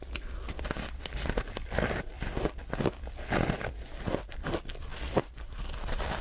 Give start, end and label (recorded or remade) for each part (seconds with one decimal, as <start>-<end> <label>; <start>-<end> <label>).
0.0-6.2 recorded